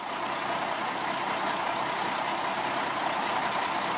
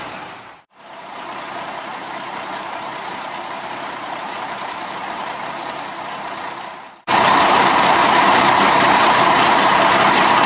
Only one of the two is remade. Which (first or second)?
second